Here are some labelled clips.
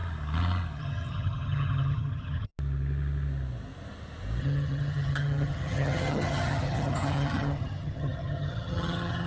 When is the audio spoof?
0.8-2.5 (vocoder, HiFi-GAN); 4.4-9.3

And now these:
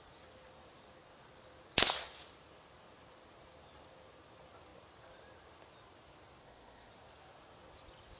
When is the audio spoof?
6.4-6.9 (codec, ZipCodec)

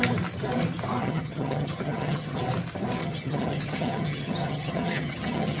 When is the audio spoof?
1.0-2.4 (vocoder, HiFi-GAN); 3.0-5.6

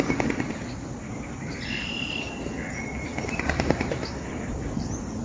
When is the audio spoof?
3.1-4.3 (vocoder, BigVGAN v2)